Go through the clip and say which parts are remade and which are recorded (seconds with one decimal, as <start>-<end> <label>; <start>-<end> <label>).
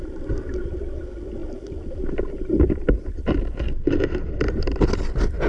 0.0-5.5 recorded